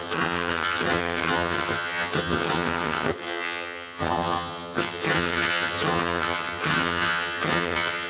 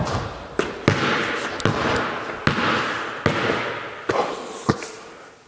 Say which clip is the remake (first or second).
first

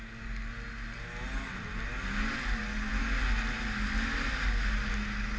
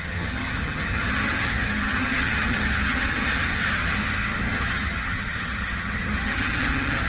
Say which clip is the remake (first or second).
second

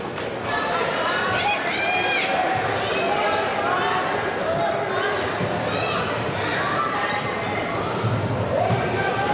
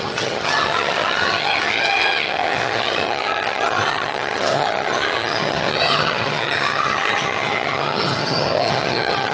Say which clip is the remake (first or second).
second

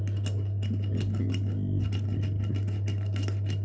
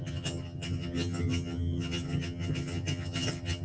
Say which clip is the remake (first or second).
second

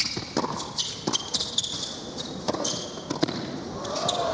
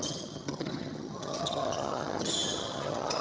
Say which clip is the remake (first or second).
second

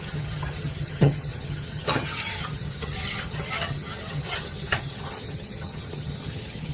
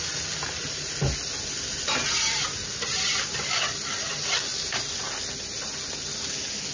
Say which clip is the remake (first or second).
first